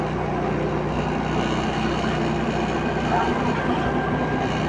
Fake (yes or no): no